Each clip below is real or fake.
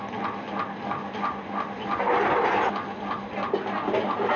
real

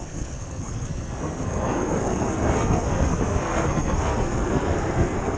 fake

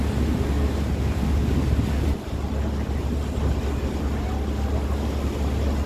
real